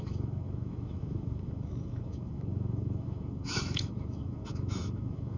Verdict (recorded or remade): remade